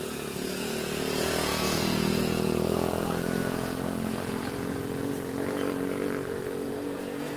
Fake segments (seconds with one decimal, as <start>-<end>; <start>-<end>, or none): 0.0-7.4